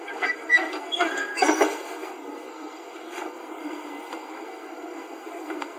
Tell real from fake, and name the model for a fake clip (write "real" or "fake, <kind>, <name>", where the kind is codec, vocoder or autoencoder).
fake, codec, SNAC